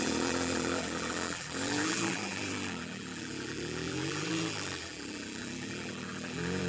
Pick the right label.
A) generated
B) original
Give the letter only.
A